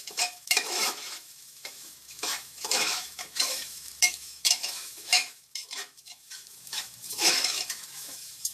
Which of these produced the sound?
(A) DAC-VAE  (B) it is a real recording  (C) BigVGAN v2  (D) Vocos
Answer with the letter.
A